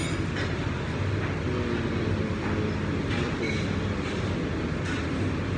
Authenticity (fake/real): real